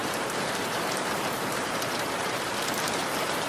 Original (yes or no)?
no